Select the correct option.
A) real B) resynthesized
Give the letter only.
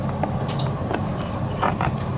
B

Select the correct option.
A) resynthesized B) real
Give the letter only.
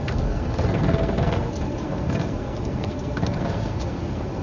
A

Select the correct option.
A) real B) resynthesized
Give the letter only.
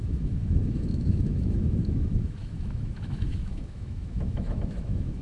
B